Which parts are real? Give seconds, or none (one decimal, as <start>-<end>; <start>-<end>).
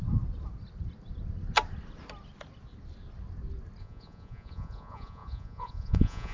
0.0-3.8